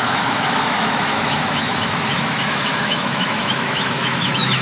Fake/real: fake